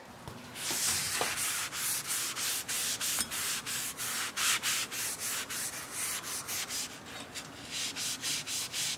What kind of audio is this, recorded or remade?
recorded